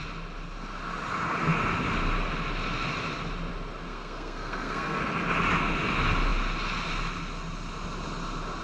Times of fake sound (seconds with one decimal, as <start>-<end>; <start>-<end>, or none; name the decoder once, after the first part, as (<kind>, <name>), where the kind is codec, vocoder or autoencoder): 3.9-5.0 (codec, SNAC)